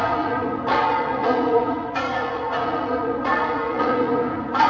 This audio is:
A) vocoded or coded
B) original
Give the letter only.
A